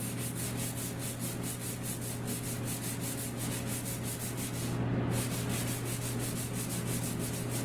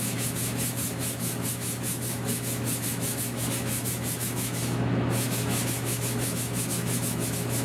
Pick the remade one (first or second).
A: second